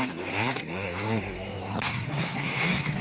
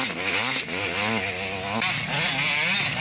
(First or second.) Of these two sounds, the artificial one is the first